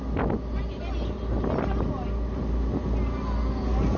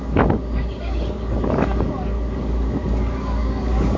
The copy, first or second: second